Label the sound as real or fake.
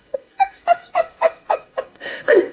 fake